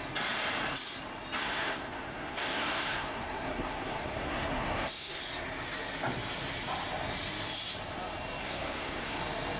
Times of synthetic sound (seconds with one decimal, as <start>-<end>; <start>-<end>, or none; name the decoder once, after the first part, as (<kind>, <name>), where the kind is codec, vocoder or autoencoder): 1.4-5.2 (codec, SNAC); 8.4-9.2